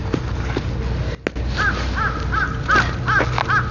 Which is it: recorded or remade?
recorded